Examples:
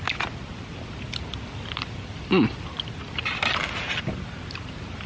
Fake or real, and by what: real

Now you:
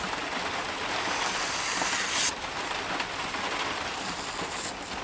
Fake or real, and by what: real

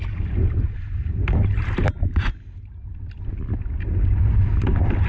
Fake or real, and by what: real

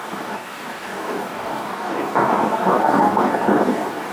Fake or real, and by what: fake, codec, DAC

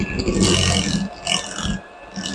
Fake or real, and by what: real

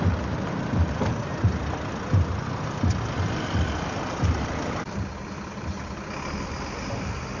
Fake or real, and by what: real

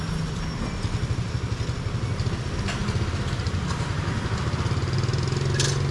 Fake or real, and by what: real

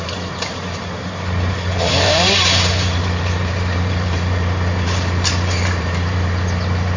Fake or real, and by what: fake, vocoder, BigVGAN v2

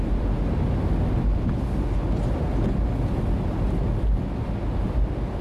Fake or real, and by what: real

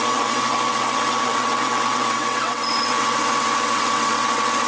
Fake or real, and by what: fake, vocoder, WaveNeXt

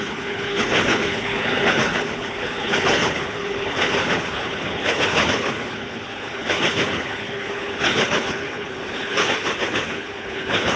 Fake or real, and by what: fake, codec, HILCodec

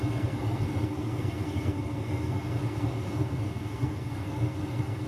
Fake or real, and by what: fake, codec, SNAC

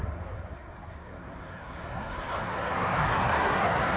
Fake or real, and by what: fake, codec, SNAC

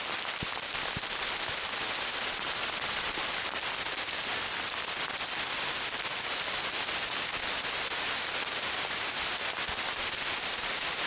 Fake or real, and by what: real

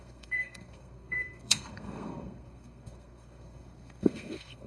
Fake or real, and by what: fake, codec, SNAC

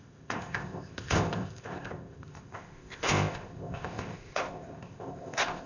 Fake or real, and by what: fake, codec, ZipCodec